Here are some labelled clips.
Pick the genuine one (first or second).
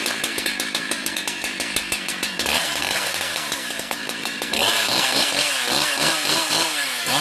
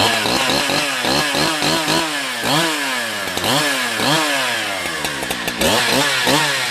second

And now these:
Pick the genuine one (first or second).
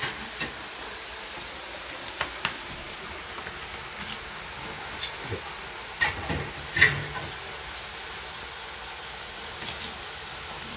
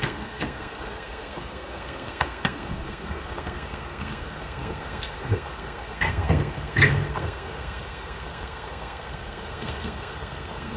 first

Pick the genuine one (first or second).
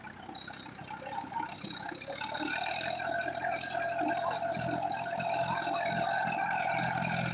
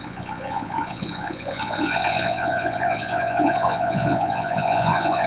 first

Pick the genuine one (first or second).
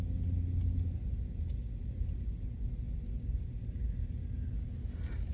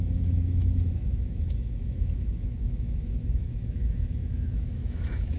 first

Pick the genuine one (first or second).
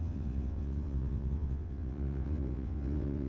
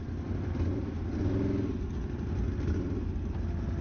second